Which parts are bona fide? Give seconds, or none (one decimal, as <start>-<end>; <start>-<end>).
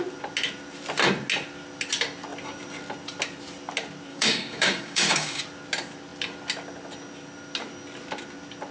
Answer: 0.0-4.1; 5.4-8.7